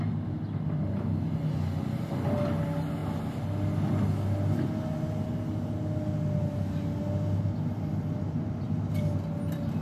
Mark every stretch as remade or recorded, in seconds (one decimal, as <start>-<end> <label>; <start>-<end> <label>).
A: 0.0-9.8 recorded